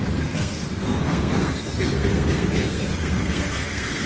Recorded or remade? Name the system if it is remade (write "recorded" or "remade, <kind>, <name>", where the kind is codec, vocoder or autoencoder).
remade, codec, SNAC